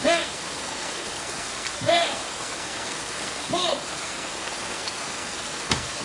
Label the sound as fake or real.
fake